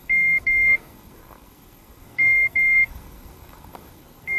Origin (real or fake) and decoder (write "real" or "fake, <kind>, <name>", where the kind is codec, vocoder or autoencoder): fake, codec, SNAC